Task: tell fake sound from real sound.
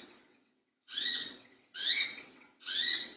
fake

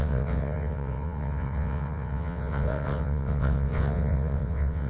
fake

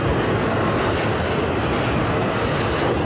real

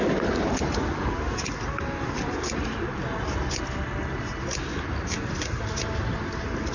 real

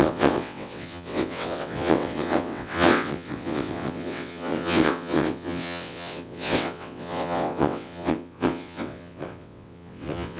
fake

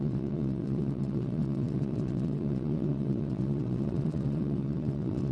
fake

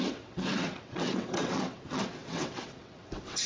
fake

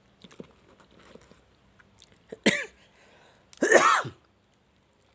real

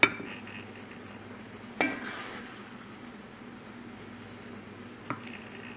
real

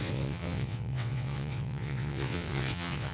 fake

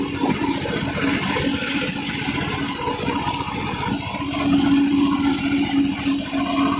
real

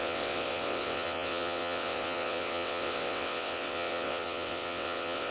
fake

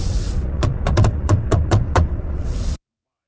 fake